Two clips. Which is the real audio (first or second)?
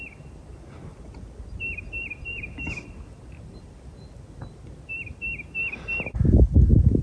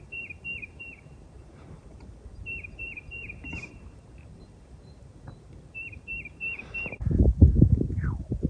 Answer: first